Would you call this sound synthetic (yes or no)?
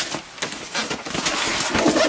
no